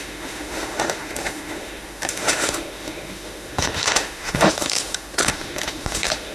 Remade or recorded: remade